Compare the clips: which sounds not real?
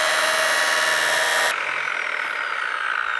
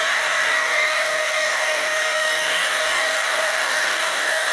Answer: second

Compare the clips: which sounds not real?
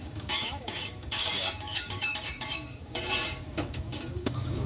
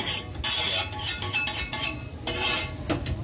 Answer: first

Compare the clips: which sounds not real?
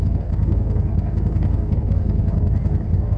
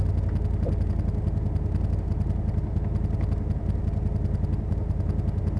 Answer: first